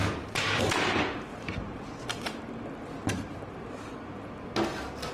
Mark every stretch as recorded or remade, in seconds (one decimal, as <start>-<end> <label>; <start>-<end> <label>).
0.0-1.3 recorded; 1.3-2.4 remade; 2.4-3.0 recorded; 3.0-3.8 remade; 3.8-5.1 recorded